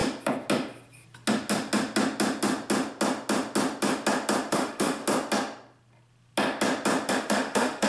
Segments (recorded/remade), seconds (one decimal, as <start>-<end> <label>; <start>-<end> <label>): 0.0-4.5 recorded; 4.5-5.0 remade; 5.0-7.1 recorded; 7.1-7.9 remade